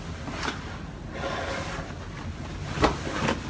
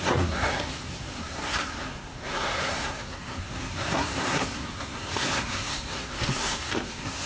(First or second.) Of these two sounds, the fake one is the second